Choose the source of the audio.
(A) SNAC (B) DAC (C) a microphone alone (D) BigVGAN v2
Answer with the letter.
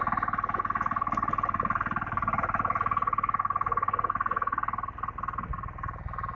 C